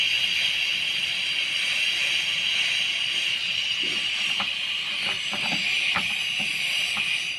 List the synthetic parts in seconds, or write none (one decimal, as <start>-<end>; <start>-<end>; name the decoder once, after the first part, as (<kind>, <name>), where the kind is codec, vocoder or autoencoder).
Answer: none

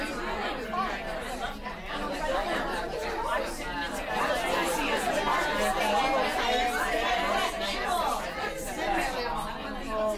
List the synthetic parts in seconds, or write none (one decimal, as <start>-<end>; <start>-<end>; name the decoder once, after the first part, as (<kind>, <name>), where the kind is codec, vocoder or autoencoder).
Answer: none

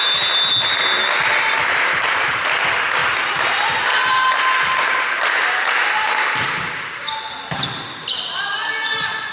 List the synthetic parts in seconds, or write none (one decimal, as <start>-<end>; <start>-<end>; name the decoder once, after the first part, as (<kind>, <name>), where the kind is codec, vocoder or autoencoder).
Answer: 1.6-2.1 (autoencoder, DAC-VAE)

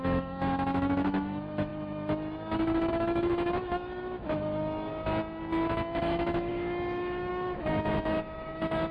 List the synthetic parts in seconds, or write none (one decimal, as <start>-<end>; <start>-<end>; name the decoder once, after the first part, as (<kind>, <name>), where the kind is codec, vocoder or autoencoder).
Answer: 0.0-4.9 (autoencoder, DAC-VAE); 6.0-8.9

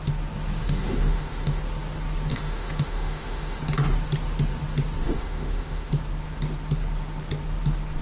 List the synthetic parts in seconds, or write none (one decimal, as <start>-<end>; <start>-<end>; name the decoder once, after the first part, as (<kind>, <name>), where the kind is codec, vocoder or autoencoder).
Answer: 0.6-1.6 (autoencoder, DAC-VAE); 2.3-3.6; 5.0-5.9

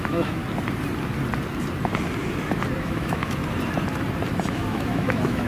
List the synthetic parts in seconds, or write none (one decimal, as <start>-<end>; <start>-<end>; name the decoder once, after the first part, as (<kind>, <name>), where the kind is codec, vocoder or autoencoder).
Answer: 0.0-0.4 (autoencoder, DAC-VAE); 2.8-3.4; 4.5-5.5

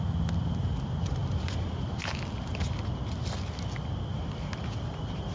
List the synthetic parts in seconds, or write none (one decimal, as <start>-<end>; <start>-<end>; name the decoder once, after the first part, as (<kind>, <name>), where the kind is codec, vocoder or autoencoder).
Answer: none

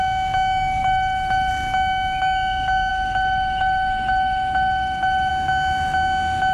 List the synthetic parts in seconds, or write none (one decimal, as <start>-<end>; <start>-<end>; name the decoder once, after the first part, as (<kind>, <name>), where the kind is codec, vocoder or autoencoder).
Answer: 0.8-1.5 (autoencoder, DAC-VAE); 2.9-5.3